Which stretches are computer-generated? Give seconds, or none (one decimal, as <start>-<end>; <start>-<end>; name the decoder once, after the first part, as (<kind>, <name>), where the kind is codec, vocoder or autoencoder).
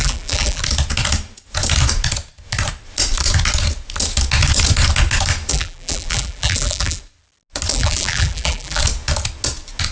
0.0-0.6 (vocoder, BigVGAN v2); 5.5-7.0; 7.7-8.8